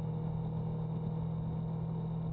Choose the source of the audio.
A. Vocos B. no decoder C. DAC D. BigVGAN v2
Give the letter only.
B